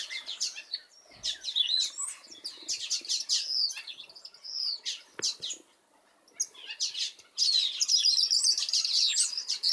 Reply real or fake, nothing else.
real